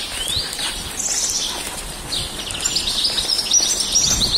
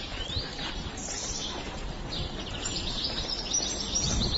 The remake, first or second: second